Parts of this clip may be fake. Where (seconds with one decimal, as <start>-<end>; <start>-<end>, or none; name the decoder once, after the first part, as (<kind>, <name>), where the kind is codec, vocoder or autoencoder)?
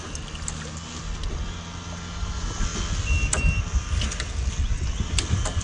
none